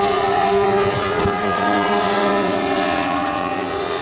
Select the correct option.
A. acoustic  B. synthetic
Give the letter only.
B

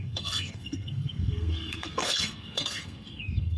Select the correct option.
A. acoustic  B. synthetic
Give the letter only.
B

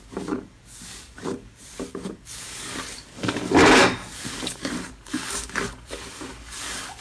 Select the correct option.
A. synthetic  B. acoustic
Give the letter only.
A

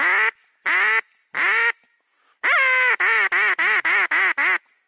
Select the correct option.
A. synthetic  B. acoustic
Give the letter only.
B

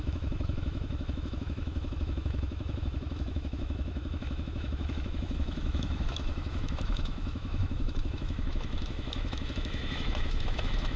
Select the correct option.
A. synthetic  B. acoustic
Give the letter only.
A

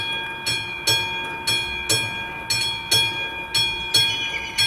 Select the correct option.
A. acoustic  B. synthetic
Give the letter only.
A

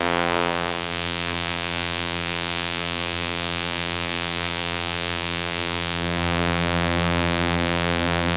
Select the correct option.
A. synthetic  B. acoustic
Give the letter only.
A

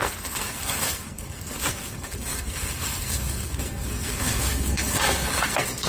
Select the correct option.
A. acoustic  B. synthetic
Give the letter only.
B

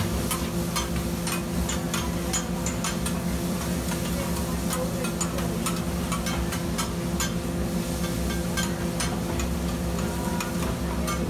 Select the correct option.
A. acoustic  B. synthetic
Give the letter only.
A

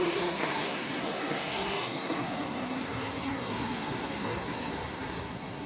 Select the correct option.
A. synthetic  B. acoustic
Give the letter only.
A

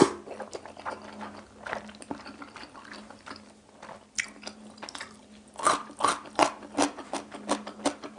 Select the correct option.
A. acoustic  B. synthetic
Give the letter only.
A